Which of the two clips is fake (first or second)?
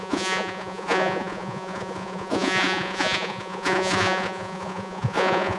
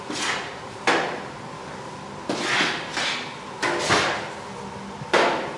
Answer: first